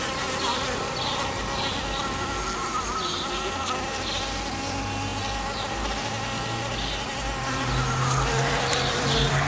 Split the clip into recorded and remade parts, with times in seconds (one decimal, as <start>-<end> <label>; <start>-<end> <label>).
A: 0.0-9.5 recorded